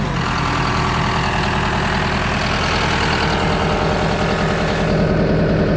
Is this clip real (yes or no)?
yes